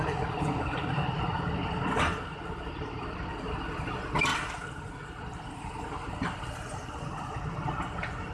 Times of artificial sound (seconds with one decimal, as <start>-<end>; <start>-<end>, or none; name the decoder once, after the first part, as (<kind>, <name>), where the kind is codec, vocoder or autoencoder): none